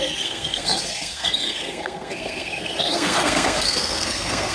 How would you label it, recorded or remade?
remade